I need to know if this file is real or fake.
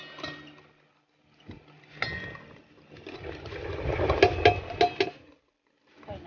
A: real